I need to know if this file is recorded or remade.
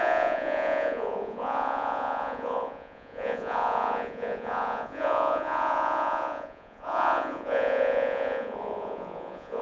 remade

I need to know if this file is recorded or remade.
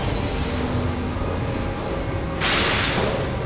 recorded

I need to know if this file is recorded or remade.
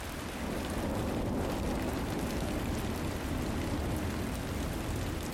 recorded